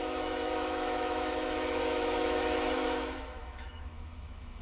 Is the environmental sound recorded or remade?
remade